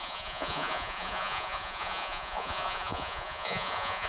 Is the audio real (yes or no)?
no